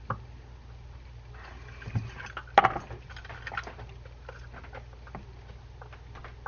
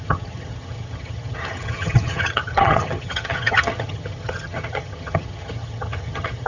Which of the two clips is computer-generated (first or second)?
second